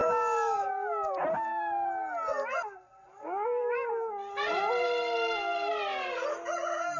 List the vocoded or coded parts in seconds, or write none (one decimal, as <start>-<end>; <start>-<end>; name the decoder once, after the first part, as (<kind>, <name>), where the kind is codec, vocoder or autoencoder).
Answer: 0.0-0.7 (codec, DAC); 3.1-3.9